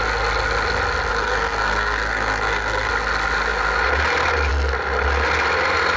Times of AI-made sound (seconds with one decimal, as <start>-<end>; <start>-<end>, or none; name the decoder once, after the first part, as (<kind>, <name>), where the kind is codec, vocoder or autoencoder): 1.1-2.9 (codec, SNAC)